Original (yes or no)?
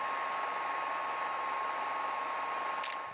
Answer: yes